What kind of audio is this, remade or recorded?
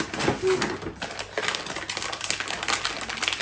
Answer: recorded